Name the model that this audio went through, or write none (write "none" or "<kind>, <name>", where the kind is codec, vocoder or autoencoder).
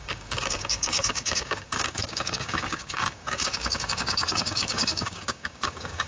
codec, DAC